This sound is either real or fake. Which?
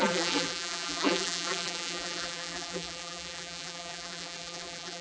fake